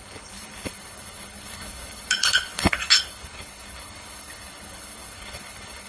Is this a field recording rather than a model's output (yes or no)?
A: no